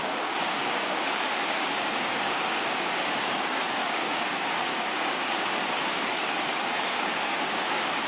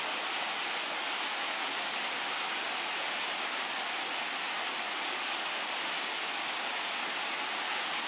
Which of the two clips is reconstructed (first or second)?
first